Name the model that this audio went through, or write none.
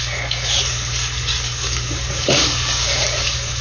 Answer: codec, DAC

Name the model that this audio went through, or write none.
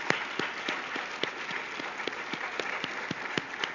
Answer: none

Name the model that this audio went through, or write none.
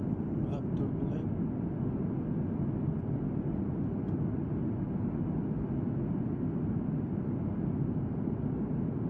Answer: none